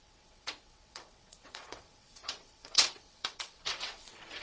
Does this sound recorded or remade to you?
remade